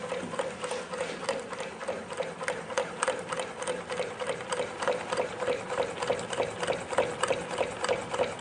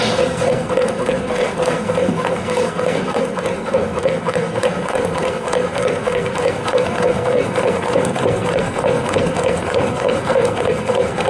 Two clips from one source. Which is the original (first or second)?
first